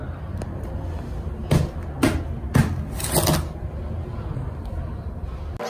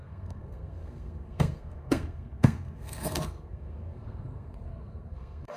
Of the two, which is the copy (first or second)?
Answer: second